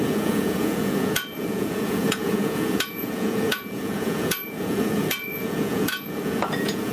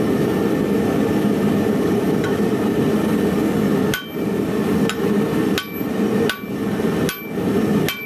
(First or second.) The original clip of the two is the second